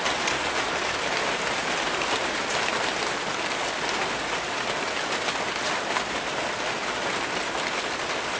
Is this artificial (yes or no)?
no